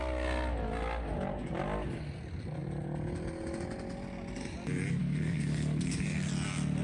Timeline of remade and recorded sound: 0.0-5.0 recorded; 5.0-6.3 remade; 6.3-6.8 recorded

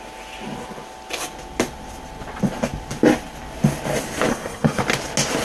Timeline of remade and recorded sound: 0.0-4.3 recorded; 4.3-4.8 remade; 4.8-5.4 recorded

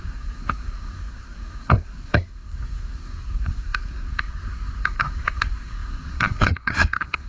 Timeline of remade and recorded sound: 0.0-7.3 remade

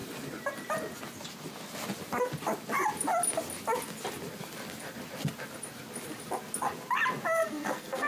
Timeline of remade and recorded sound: 0.0-7.4 recorded; 7.4-8.1 remade

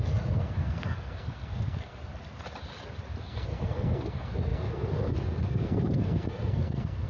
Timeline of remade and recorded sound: 0.0-2.1 remade; 2.1-3.2 recorded; 3.2-7.1 remade

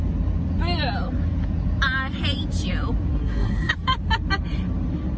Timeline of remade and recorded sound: 0.0-3.1 recorded; 3.1-3.7 remade; 3.7-5.2 recorded

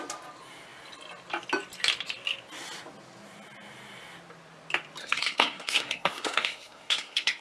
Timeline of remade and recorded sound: 0.0-5.0 recorded; 5.0-7.4 remade

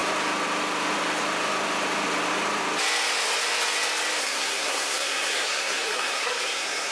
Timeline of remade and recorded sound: 0.0-4.2 recorded; 4.2-6.9 remade